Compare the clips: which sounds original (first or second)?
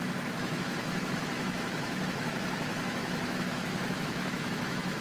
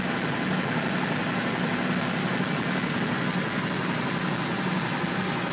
second